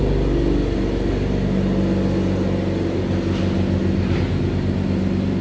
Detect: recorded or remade recorded